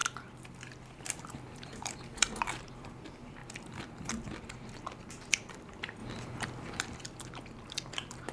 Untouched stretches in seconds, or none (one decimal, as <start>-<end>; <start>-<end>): 0.0-1.0; 6.0-6.8